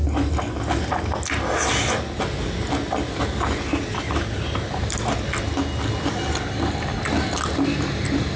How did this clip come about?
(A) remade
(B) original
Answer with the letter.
B